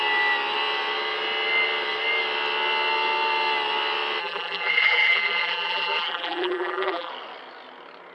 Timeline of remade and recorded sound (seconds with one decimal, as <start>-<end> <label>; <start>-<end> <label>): 0.0-4.2 recorded; 4.2-7.1 remade; 7.1-8.1 recorded